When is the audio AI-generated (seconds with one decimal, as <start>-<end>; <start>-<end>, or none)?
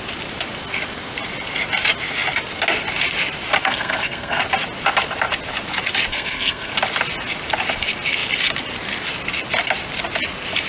3.6-4.4; 6.1-6.7